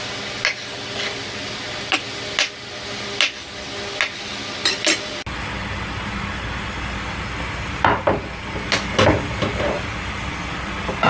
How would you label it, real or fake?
real